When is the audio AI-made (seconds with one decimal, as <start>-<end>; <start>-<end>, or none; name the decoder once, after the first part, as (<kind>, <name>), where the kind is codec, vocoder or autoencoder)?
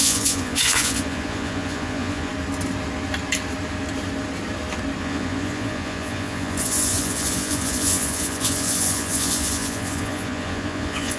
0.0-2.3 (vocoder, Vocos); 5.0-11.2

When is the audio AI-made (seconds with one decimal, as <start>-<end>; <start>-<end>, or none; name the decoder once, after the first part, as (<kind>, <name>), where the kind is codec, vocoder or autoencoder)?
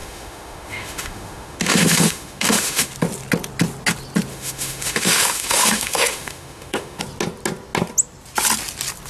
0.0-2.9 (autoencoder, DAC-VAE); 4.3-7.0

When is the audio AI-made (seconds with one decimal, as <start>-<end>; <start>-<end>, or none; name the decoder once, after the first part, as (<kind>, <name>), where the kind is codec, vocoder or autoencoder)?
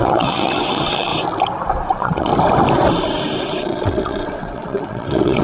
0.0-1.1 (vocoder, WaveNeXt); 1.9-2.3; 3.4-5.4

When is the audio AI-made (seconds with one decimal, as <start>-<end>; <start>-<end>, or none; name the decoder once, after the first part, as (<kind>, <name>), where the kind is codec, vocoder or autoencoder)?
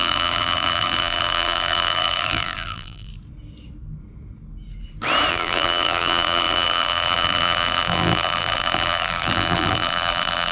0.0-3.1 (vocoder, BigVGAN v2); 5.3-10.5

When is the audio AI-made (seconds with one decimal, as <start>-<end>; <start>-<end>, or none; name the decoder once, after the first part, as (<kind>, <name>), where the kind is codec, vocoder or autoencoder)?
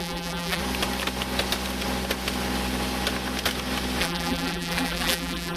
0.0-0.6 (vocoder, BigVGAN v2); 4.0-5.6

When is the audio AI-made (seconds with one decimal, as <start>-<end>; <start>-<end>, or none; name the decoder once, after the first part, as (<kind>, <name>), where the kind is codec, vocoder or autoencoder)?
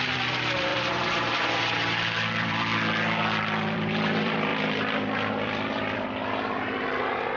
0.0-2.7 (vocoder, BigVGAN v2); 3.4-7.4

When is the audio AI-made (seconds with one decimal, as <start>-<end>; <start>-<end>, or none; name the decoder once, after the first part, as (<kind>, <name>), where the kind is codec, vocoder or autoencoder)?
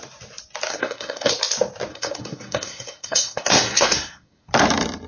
0.7-1.3 (codec, SNAC); 1.9-4.5